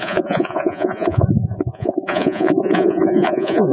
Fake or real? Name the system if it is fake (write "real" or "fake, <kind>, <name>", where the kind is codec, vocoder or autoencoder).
fake, vocoder, Vocos